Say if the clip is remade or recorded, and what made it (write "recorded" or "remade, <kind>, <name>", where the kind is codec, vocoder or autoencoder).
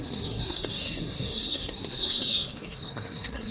remade, codec, SNAC